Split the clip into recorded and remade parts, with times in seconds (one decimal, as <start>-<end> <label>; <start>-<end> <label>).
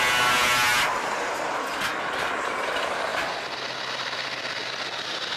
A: 0.0-5.4 recorded